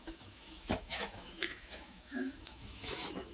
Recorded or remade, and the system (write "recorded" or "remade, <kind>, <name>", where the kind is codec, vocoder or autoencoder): remade, autoencoder, DAC-VAE